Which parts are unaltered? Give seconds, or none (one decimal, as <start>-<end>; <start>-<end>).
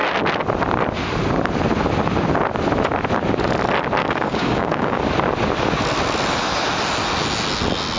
0.0-4.0; 5.0-8.0